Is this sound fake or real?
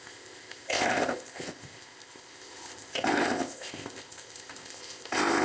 fake